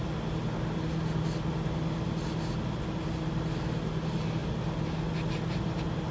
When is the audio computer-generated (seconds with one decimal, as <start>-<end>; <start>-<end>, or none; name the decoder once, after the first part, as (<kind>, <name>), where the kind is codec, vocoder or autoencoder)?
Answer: none